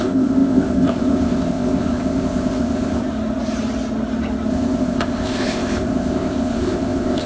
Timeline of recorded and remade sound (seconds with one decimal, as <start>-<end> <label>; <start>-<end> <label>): 0.0-3.0 remade; 3.0-4.5 recorded; 4.5-7.3 remade